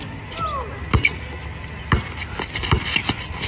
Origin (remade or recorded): recorded